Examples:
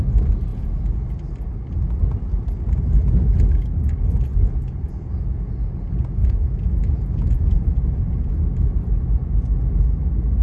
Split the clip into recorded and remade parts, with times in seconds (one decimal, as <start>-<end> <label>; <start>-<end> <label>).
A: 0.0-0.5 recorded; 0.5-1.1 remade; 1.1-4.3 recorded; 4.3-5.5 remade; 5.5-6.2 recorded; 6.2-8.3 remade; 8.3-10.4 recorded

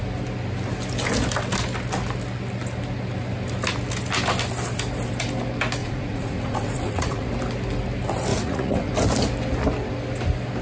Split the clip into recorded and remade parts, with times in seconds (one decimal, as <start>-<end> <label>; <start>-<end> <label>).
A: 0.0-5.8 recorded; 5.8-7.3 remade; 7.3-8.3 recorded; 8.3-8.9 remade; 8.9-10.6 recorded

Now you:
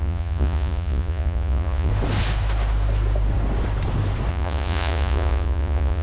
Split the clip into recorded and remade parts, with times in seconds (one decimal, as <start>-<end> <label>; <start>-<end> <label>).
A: 0.0-1.9 remade; 1.9-4.3 recorded; 4.3-6.0 remade

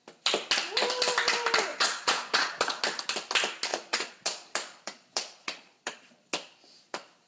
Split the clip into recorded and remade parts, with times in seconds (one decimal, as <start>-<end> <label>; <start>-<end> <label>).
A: 0.0-1.7 recorded; 1.7-2.8 remade; 2.8-3.7 recorded; 3.7-6.3 remade; 6.3-7.3 recorded

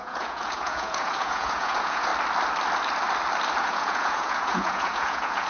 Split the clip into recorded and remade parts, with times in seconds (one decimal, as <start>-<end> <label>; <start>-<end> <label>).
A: 0.0-2.1 remade; 2.1-3.6 recorded; 3.6-5.5 remade

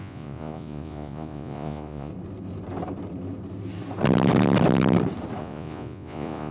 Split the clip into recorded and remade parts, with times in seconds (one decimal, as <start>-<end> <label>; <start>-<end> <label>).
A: 0.0-2.1 remade; 2.1-5.4 recorded; 5.4-6.5 remade